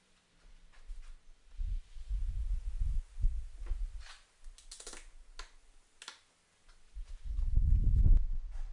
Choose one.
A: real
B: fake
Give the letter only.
A